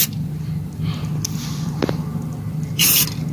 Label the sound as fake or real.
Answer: real